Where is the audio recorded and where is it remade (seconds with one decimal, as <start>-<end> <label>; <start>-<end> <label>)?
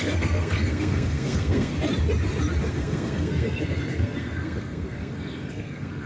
0.0-1.7 remade; 1.7-2.7 recorded; 2.7-6.1 remade